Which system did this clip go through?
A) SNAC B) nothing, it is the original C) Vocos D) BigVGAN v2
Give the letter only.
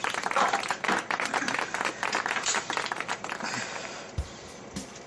D